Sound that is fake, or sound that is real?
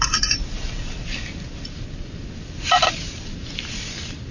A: fake